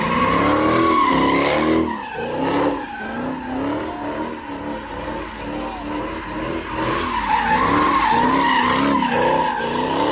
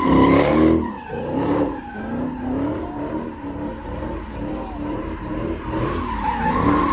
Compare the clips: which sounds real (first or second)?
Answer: first